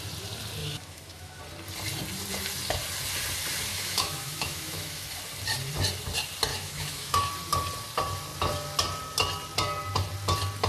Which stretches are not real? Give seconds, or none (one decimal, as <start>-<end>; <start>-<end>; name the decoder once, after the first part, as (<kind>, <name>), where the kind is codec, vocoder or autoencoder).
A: 0.6-1.4 (autoencoder, DAC-VAE); 3.7-5.2; 6.5-7.3